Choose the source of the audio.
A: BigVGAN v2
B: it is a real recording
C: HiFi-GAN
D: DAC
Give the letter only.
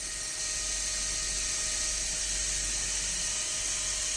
B